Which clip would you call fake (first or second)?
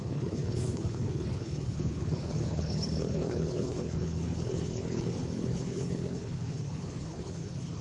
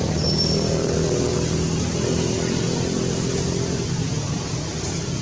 first